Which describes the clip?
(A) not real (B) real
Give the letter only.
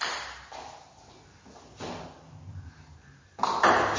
B